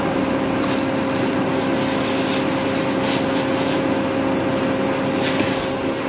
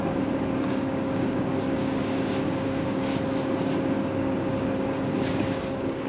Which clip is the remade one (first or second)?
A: second